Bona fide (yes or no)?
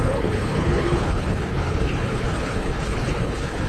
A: no